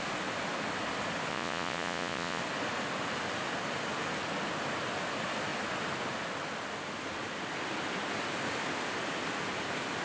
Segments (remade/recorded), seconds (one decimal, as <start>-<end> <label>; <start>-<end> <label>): 0.0-1.3 recorded; 1.3-2.4 remade; 2.4-10.0 recorded